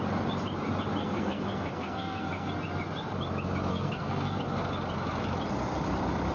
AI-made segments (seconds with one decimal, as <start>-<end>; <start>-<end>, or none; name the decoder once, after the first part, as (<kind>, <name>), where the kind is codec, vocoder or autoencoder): 1.0-2.5 (codec, SNAC); 3.7-4.4